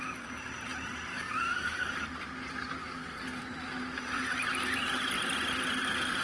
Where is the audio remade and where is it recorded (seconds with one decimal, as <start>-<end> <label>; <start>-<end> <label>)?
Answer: 0.0-1.1 recorded; 1.1-1.9 remade; 1.9-2.8 recorded; 2.8-3.4 remade; 3.4-6.2 recorded